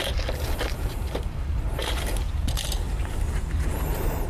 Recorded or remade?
remade